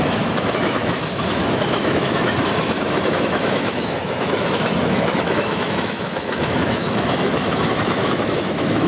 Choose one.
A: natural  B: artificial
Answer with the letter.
B